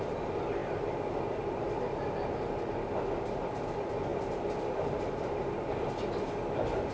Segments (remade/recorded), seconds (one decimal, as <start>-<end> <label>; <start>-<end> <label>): 0.0-6.9 recorded